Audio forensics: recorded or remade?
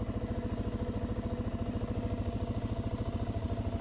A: recorded